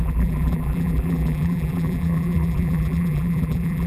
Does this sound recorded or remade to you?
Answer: remade